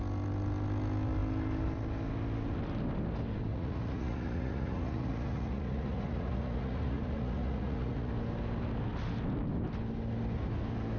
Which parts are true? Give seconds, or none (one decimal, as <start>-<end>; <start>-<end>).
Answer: 0.0-3.5; 8.1-11.0